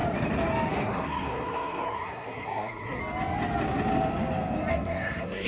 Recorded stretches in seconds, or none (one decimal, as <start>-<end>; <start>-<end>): 0.0-0.7; 3.0-4.7